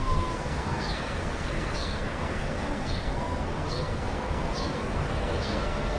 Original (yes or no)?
no